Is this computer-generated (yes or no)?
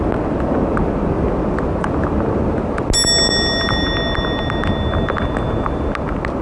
no